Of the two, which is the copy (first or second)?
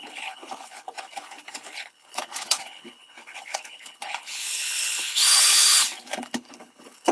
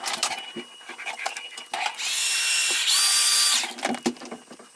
first